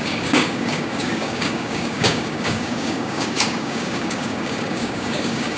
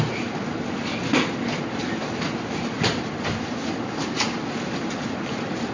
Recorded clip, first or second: second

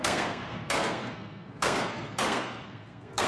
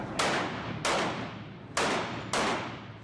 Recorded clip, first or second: second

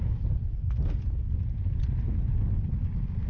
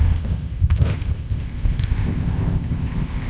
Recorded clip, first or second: first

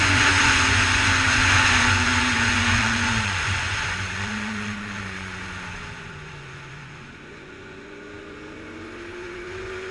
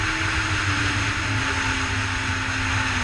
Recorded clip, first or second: second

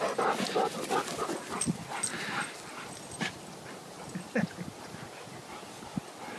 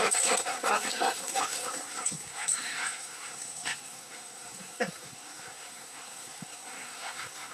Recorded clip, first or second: first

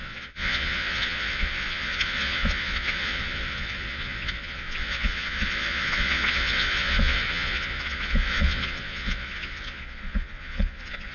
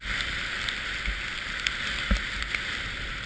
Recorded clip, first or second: second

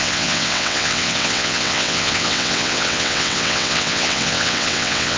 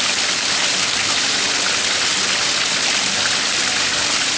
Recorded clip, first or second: second